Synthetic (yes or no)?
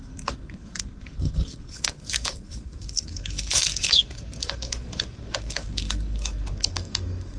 yes